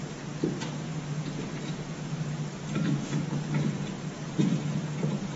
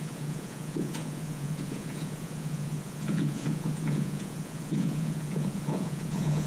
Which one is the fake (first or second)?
second